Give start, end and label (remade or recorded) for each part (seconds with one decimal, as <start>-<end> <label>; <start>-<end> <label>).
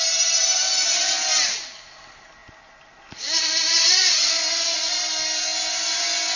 0.0-6.4 recorded